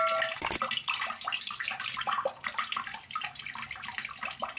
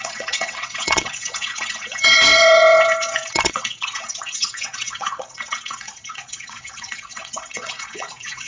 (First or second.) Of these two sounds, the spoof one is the second